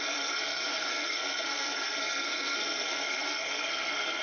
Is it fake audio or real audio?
fake